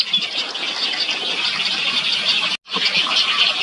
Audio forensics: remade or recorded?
recorded